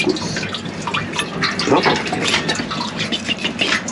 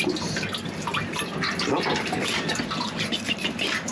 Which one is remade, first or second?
second